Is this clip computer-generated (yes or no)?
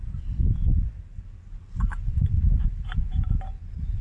no